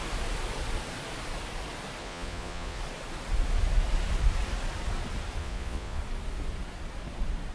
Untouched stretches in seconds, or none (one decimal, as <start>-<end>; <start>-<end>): 0.0-2.0; 2.8-5.4; 6.0-7.5